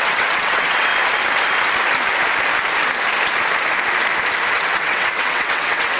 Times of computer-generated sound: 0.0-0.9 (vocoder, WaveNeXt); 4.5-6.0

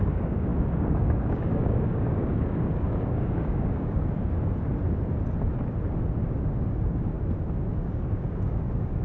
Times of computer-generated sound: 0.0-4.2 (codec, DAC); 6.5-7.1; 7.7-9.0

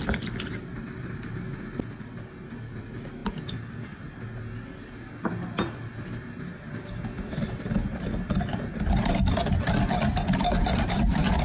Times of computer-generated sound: none

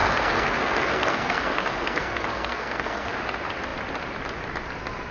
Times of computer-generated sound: 0.0-3.1 (codec, SNAC)

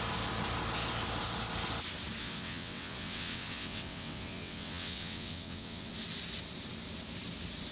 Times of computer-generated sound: 2.2-5.9 (vocoder, WaveNeXt)

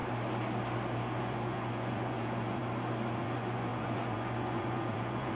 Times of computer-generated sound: 1.2-2.6 (vocoder, Vocos); 3.2-5.4